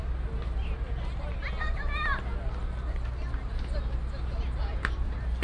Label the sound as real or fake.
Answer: real